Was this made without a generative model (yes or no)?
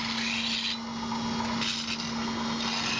yes